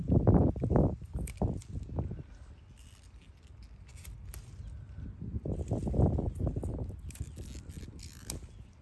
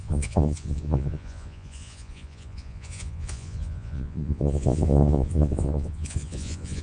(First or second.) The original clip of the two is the first